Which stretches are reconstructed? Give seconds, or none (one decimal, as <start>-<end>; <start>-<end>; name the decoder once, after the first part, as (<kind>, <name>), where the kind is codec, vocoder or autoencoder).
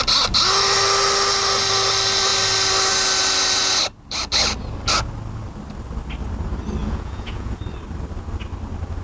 6.8-7.6 (vocoder, Vocos)